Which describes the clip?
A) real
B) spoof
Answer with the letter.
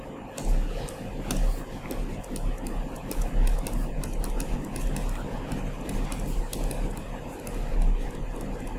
A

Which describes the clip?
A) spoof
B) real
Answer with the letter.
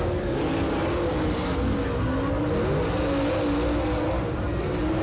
B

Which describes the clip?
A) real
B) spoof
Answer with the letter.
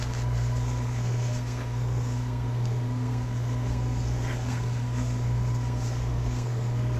B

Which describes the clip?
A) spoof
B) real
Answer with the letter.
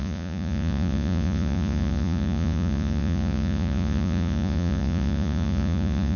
A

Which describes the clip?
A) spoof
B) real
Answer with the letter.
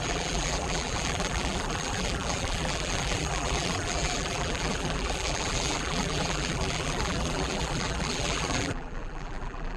A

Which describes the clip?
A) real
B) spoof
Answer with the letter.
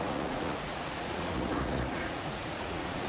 B